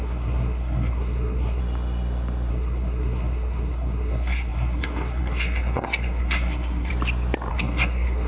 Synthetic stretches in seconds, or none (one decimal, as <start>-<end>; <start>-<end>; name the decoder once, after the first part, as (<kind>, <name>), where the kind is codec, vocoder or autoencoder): 0.0-1.6 (codec, SNAC); 2.5-6.9; 7.5-8.3